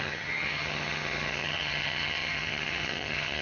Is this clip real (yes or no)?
no